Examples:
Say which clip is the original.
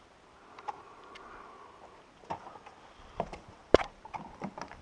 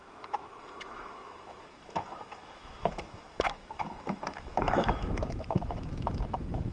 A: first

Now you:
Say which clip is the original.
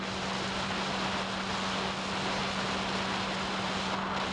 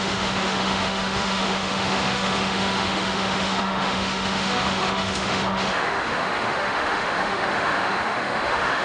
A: first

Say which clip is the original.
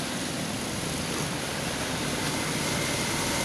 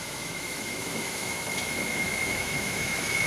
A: first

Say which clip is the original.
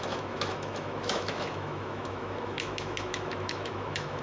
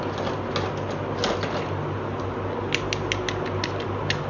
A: second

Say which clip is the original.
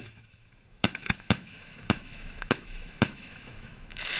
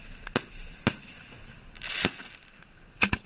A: second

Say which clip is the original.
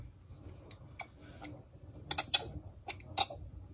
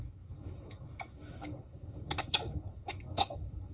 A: first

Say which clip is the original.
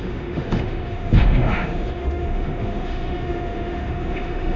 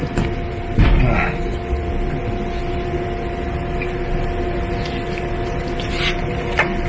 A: second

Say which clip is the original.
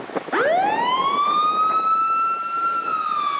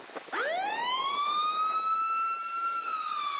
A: first